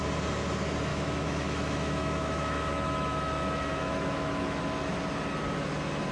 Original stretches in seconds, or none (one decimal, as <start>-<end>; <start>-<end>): 0.0-0.9; 4.6-6.1